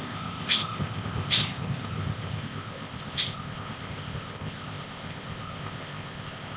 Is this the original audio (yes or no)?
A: no